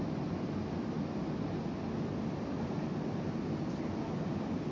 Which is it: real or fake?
real